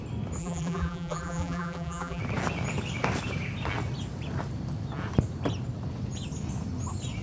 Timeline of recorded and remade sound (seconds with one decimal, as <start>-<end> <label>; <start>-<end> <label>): 0.0-0.4 recorded; 0.4-2.2 remade; 2.2-7.2 recorded